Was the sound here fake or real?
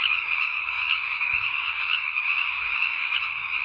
fake